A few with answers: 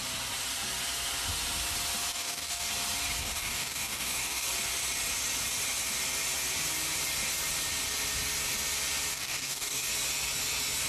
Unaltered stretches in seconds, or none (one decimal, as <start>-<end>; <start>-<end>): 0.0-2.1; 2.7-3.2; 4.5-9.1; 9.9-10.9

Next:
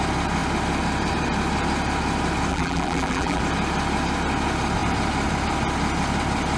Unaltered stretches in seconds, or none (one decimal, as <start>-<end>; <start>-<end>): 0.0-2.5; 3.4-6.6

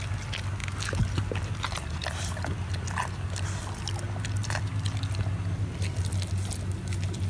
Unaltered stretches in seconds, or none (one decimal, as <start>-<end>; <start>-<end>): 0.0-7.3

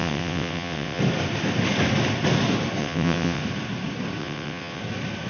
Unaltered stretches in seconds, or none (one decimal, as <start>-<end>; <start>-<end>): 1.0-2.8; 3.4-4.2; 4.8-5.3

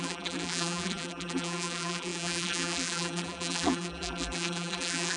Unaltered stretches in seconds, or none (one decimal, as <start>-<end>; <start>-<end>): none

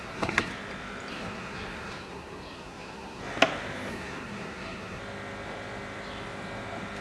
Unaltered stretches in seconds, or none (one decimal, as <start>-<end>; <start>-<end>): 0.5-1.1; 3.2-3.9; 5.0-7.0

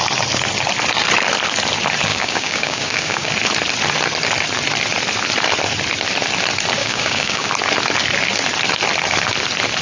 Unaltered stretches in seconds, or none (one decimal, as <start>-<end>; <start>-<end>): 0.0-2.1; 3.3-6.8; 7.5-9.8